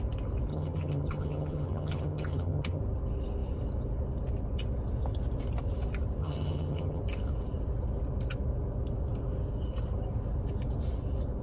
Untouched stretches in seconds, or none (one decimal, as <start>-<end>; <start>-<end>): 0.0-0.5; 2.8-6.2; 7.0-11.4

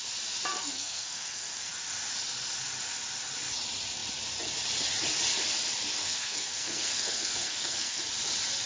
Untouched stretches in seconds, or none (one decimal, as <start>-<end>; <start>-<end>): 0.0-0.5; 1.7-6.0; 8.0-8.7

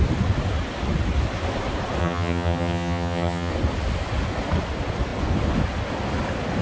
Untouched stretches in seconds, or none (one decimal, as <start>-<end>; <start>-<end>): 0.0-2.0; 3.5-6.6

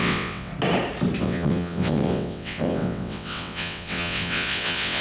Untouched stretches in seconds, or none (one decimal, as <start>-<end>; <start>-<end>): 0.5-1.2